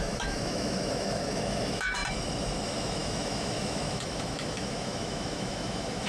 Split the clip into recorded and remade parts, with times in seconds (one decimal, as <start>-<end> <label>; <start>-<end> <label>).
0.0-2.0 remade; 2.0-2.6 recorded; 2.6-6.1 remade

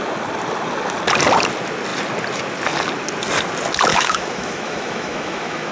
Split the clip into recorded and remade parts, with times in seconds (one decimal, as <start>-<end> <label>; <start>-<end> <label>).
0.0-3.9 recorded; 3.9-5.7 remade

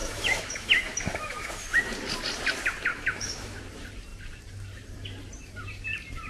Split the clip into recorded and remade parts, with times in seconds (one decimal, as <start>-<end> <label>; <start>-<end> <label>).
0.0-1.5 remade; 1.5-2.9 recorded; 2.9-3.6 remade; 3.6-6.3 recorded

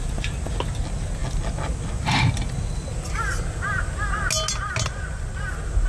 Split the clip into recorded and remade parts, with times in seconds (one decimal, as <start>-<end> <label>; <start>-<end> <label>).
0.0-5.9 recorded

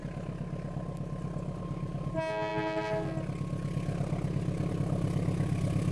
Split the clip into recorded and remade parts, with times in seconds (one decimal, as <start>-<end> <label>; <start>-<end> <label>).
0.0-5.9 recorded

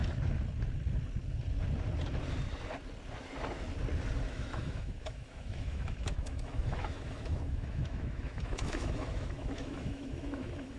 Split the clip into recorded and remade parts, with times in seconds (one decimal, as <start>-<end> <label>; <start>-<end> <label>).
0.0-4.3 recorded; 4.3-10.8 remade

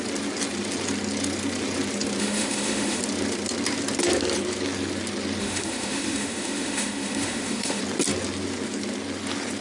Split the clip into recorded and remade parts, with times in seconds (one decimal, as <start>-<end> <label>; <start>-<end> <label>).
0.0-2.2 recorded; 2.2-3.0 remade; 3.0-5.4 recorded; 5.4-7.8 remade; 7.8-9.6 recorded